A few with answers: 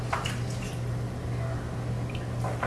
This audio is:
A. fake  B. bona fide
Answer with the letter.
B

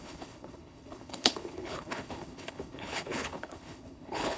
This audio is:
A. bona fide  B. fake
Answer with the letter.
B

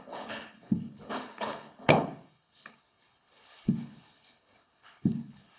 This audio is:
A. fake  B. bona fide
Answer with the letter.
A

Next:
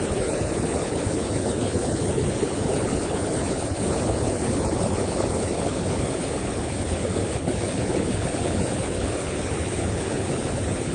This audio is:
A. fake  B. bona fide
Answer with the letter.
A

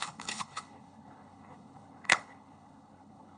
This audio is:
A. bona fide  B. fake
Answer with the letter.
B